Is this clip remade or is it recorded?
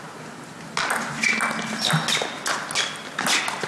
recorded